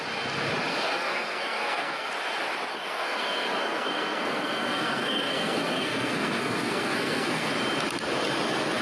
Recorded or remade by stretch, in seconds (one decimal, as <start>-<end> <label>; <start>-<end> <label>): 0.0-0.7 recorded; 0.7-2.1 remade; 2.1-2.7 recorded; 2.7-7.5 remade; 7.5-8.8 recorded